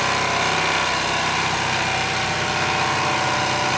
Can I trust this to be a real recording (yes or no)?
yes